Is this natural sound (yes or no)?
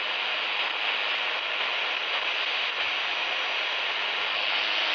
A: yes